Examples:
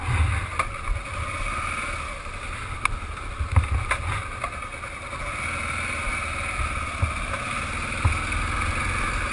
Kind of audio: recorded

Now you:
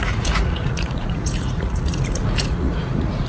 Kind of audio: remade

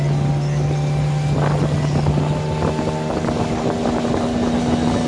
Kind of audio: recorded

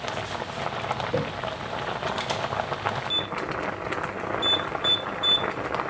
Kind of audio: recorded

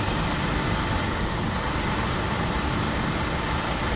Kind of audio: recorded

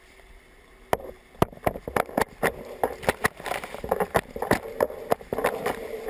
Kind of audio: recorded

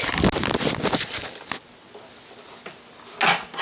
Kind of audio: recorded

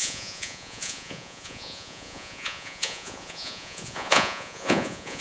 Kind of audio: remade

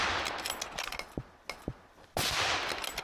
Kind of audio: recorded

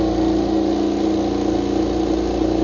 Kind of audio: recorded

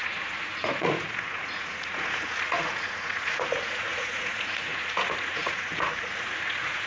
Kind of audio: remade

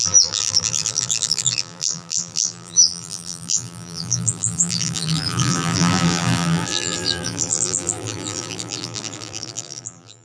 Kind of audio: remade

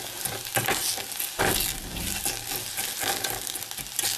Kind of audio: recorded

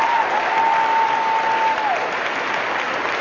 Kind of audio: recorded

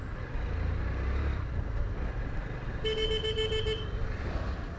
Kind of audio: recorded